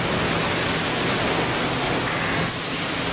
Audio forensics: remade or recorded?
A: recorded